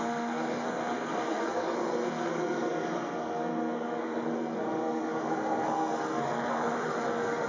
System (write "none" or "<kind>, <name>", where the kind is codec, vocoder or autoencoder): codec, SNAC